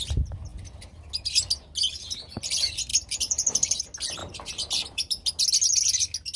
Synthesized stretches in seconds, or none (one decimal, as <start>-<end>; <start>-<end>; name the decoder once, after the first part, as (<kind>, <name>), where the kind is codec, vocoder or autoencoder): 2.9-3.8 (vocoder, BigVGAN v2); 4.2-5.4